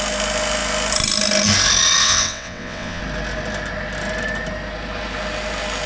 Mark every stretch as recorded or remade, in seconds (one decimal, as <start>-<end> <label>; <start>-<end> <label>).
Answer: 0.0-2.0 recorded; 2.0-3.0 remade; 3.0-5.9 recorded